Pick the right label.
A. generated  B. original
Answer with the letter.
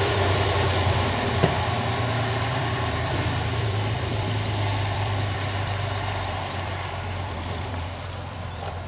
A